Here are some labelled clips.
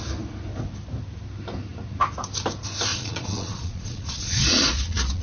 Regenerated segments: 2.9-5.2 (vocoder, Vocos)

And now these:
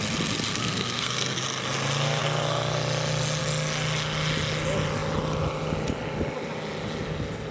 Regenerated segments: 0.5-1.4 (codec, SNAC)